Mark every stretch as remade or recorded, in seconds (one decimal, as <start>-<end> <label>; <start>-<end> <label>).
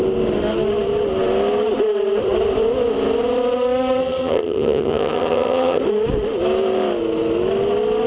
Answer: 0.0-4.0 recorded; 4.0-5.8 remade; 5.8-8.1 recorded